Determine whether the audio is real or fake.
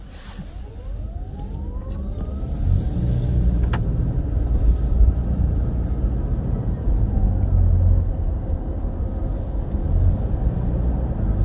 real